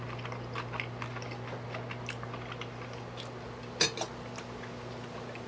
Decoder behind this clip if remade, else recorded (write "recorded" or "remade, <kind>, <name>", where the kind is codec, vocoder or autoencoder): recorded